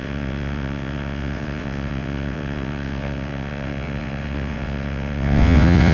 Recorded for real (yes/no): no